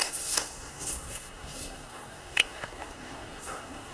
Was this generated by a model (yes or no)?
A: yes